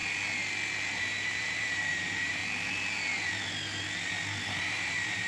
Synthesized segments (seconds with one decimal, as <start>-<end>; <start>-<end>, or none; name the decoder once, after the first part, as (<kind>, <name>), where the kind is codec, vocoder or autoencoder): 1.0-2.4 (vocoder, BigVGAN v2); 4.6-5.3